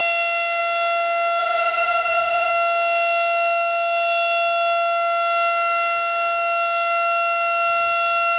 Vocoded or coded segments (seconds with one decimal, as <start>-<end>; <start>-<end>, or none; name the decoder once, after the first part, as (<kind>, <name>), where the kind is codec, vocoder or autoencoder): 1.4-2.5 (vocoder, Vocos)